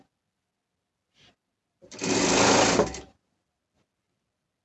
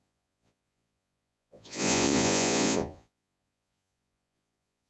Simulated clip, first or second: second